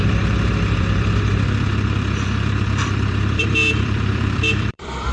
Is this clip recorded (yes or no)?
no